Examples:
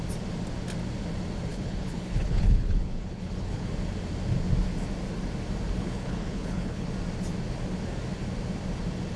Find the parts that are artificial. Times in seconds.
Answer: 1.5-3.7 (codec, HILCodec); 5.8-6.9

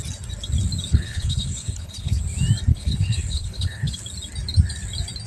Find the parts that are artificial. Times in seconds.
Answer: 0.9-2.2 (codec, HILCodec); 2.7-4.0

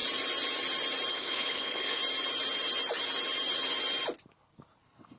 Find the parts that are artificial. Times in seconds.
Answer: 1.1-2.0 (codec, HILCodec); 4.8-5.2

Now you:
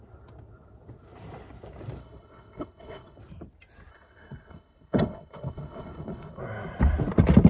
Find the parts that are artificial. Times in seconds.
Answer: 2.0-3.2 (codec, HILCodec); 3.9-6.4

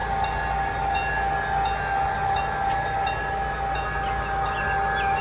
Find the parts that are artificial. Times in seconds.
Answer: none

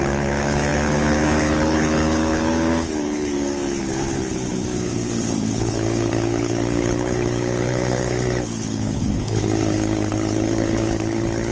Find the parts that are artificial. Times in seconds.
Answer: 0.0-11.5 (codec, HILCodec)